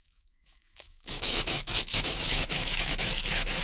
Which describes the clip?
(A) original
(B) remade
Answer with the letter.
B